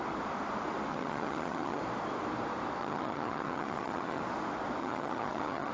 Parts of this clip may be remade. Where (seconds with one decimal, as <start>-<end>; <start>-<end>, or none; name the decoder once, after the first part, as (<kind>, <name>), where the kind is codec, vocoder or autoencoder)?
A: 0.9-1.8 (vocoder, HiFi-GAN); 2.8-4.2; 4.8-5.7

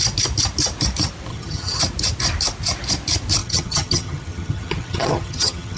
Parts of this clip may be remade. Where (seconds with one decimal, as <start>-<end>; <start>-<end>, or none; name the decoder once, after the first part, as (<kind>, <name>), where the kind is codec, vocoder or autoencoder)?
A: 1.3-1.8 (vocoder, HiFi-GAN); 3.4-5.8

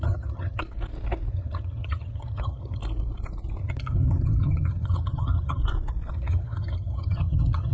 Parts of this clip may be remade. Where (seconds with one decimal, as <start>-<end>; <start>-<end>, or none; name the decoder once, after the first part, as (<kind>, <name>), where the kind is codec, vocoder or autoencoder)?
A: 0.0-0.6 (vocoder, HiFi-GAN); 1.3-2.8; 3.6-5.6; 6.1-7.7

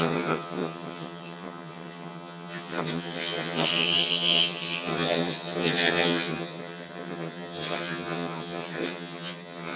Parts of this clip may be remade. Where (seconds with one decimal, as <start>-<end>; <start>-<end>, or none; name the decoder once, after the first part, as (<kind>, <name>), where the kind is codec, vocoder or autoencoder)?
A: 0.0-9.8 (vocoder, HiFi-GAN)